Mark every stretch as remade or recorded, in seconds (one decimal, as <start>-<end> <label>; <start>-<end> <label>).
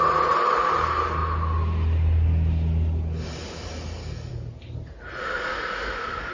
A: 0.0-5.2 recorded; 5.2-6.3 remade